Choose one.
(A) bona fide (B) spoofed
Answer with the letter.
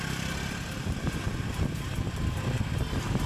A